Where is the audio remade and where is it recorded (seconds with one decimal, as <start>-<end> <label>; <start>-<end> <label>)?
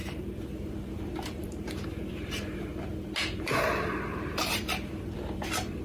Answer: 0.0-2.7 remade; 2.7-3.2 recorded; 3.2-5.8 remade